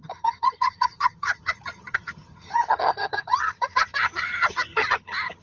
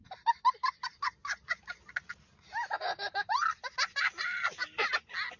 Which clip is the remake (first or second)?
first